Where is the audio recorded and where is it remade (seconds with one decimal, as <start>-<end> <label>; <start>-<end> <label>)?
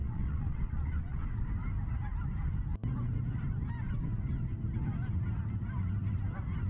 0.0-1.5 remade; 1.5-6.7 recorded